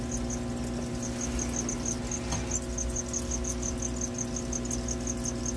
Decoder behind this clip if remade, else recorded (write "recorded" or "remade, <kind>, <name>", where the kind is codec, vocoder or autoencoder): recorded